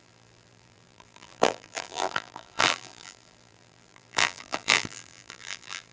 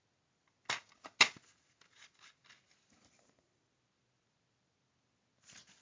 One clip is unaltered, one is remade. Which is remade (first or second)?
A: first